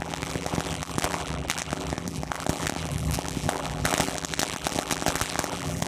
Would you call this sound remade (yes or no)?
yes